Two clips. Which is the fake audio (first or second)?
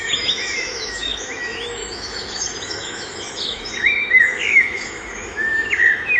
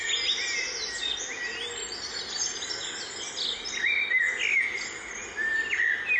first